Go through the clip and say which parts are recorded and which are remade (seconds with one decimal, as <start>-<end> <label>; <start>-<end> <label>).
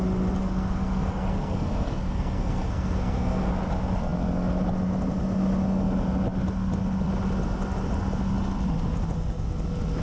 0.0-0.4 recorded; 0.4-3.5 remade; 3.5-10.0 recorded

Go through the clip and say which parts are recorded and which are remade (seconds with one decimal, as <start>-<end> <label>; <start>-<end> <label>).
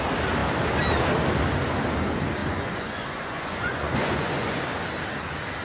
0.0-2.4 recorded; 2.4-4.6 remade; 4.6-5.6 recorded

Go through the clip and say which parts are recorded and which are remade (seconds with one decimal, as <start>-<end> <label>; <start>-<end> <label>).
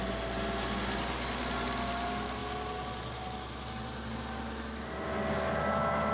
0.0-6.1 recorded